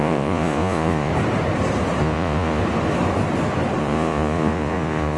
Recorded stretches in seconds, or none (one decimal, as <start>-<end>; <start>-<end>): 1.1-2.0; 2.6-3.8